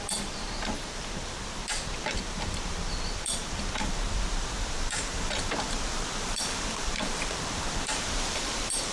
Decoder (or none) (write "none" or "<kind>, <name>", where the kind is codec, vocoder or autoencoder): vocoder, BigVGAN v2